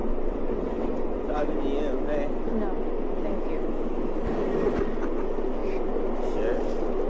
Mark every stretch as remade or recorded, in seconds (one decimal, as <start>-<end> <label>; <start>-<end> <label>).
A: 0.0-1.4 remade; 1.4-7.1 recorded